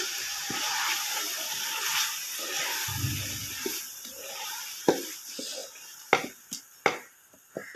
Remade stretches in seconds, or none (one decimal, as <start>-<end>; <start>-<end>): none